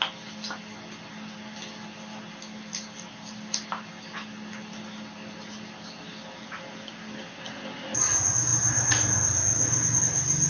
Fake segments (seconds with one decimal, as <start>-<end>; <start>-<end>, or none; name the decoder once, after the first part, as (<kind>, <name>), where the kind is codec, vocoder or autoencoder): none